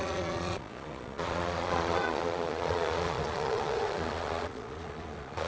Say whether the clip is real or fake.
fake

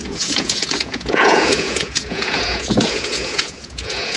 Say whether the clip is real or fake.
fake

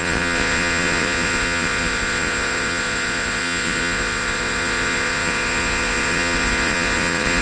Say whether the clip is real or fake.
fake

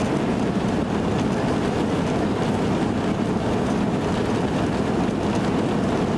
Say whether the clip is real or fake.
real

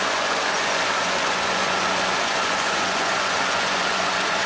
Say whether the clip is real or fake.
fake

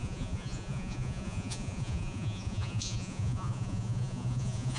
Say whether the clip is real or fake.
fake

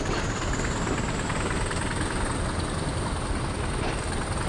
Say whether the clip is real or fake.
real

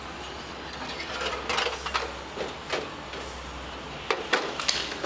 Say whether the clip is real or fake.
real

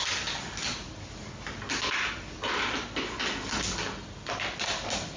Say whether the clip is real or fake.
real